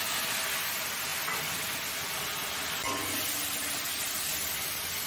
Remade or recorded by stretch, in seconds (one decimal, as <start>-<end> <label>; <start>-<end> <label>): 0.0-5.1 recorded